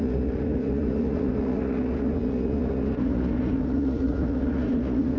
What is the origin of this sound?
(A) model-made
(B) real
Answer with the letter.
A